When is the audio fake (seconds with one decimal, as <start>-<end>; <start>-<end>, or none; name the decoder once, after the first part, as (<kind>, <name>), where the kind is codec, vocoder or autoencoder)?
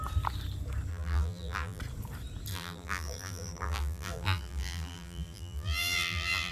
0.9-1.8 (vocoder, BigVGAN v2); 2.5-6.5